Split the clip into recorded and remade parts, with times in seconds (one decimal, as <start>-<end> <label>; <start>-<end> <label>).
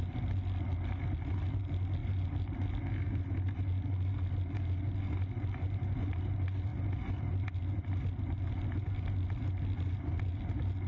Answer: 0.0-10.9 recorded